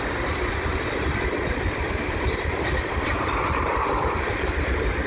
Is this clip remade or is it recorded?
remade